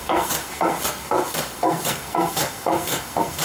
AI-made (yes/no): yes